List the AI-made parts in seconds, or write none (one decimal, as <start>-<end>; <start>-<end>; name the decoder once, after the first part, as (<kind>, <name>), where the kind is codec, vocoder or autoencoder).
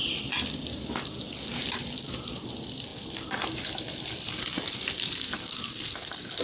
none